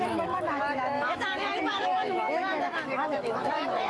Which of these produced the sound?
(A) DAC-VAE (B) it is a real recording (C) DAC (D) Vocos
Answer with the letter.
A